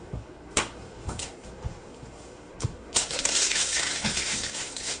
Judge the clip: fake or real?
fake